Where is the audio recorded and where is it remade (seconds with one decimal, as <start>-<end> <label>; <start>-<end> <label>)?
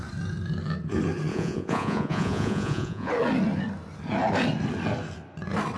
0.0-1.3 recorded; 1.3-3.1 remade; 3.1-5.8 recorded